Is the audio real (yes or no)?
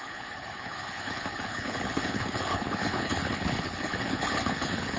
no